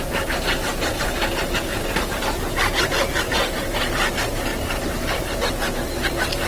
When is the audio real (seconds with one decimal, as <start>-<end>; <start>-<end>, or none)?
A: 0.0-1.7; 2.2-4.5; 5.5-6.5